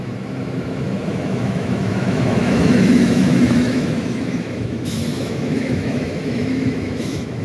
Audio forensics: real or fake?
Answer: fake